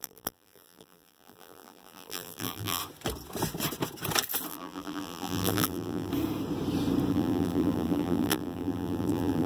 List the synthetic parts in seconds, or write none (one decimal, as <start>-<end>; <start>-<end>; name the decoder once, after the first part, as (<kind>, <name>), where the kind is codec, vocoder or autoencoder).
0.0-2.8 (vocoder, BigVGAN v2); 4.5-6.1; 7.1-9.5